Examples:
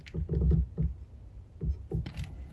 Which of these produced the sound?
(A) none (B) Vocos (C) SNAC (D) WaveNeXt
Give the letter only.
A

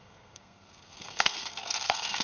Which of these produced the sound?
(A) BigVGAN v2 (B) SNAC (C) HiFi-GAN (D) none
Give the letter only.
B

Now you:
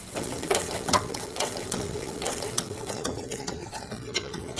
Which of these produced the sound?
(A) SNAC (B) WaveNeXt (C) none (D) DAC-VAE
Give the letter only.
B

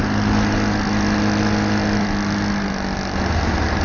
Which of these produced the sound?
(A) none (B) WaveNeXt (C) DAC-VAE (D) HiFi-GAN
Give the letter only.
A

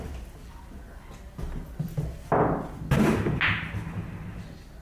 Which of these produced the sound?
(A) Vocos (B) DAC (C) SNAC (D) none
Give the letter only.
D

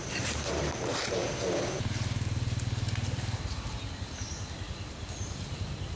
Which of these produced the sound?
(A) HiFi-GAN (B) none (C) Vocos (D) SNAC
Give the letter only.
B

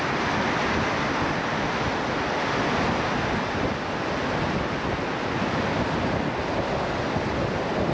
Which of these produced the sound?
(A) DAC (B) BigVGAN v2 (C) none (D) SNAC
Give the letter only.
C